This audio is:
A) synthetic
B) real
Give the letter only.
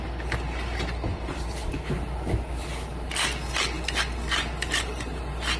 B